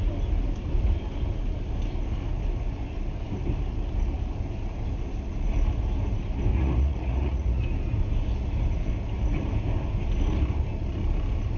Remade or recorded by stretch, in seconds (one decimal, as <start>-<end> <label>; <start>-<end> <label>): 0.0-6.5 recorded; 6.5-7.6 remade; 7.6-11.6 recorded